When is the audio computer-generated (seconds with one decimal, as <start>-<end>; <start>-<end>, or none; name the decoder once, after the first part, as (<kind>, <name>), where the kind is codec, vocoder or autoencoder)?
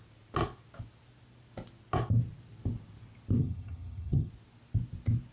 3.4-4.3 (vocoder, HiFi-GAN)